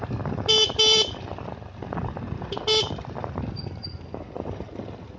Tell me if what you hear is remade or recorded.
recorded